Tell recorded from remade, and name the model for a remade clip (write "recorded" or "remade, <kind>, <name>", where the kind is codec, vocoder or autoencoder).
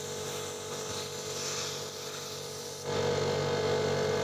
recorded